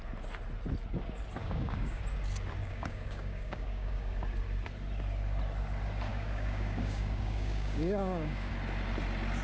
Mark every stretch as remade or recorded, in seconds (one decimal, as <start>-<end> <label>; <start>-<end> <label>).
0.0-1.4 recorded; 1.4-2.0 remade; 2.0-2.6 recorded; 2.6-4.1 remade; 4.1-6.1 recorded; 6.1-8.5 remade; 8.5-9.4 recorded